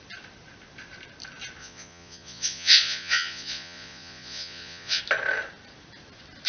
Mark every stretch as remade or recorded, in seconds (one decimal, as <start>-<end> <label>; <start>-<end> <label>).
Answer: 0.0-1.6 recorded; 1.6-5.0 remade; 5.0-6.5 recorded